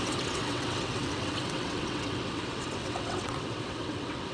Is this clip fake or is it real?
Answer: fake